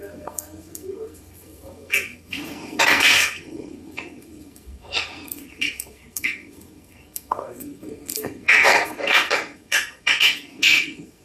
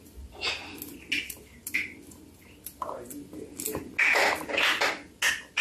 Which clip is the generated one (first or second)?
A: first